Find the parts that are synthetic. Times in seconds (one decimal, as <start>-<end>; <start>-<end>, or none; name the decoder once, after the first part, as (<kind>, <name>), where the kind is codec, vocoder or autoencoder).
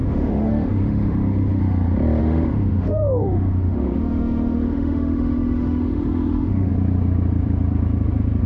0.0-1.6 (autoencoder, DAC-VAE); 2.2-6.7